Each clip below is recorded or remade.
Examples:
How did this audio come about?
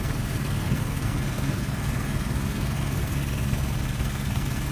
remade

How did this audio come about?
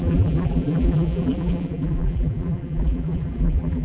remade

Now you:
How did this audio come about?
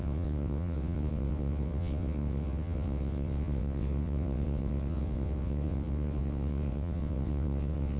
remade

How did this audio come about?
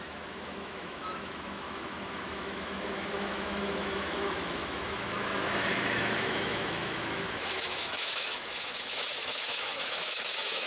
remade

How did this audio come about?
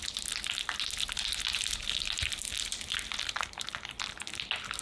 recorded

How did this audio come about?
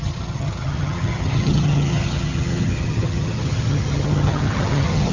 remade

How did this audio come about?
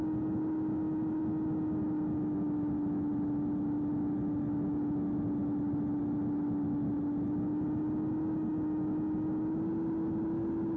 recorded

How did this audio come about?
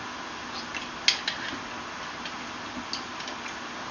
recorded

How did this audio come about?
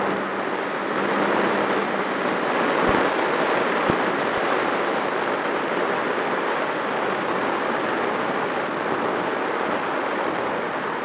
recorded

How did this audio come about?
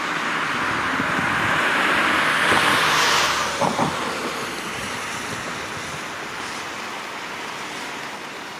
recorded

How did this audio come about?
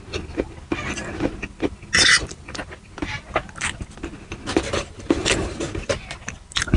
recorded